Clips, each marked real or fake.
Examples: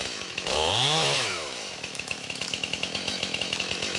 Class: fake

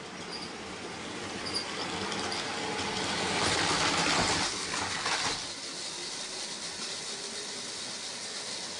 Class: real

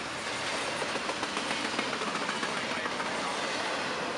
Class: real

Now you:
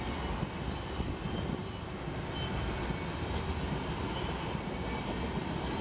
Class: real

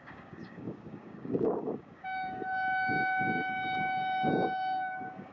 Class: fake